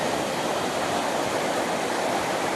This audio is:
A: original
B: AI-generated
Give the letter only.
A